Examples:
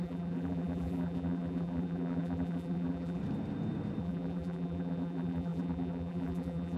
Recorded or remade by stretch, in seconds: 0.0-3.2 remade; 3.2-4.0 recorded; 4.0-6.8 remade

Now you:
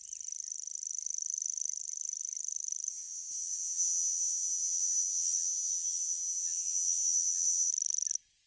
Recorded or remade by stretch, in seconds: 0.0-2.9 recorded; 2.9-7.7 remade; 7.7-8.5 recorded